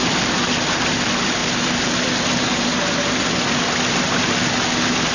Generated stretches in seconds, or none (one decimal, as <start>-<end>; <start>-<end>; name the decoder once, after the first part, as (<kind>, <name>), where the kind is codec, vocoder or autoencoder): none